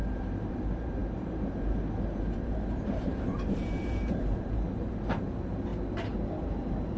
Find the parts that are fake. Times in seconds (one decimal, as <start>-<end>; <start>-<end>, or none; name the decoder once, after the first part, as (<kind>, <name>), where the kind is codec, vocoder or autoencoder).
0.0-5.7 (vocoder, BigVGAN v2)